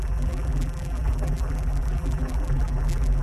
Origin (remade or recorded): remade